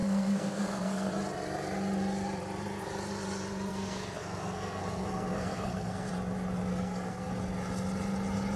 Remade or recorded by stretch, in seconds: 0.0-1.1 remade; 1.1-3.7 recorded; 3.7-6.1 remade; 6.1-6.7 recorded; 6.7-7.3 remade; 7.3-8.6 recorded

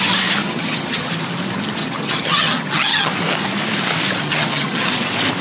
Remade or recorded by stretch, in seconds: 0.0-0.4 recorded; 0.4-1.1 remade; 1.1-1.8 recorded; 1.8-3.1 remade; 3.1-4.2 recorded; 4.2-4.9 remade; 4.9-5.4 recorded

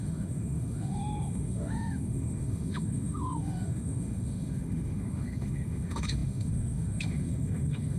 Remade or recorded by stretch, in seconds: 0.0-8.0 remade

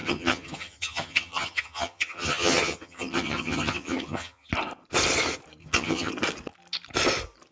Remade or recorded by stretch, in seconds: 0.0-4.5 remade; 4.5-5.6 recorded; 5.6-6.1 remade; 6.1-7.5 recorded